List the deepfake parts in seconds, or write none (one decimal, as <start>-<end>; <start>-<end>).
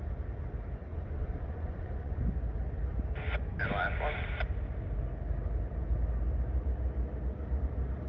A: 0.9-2.2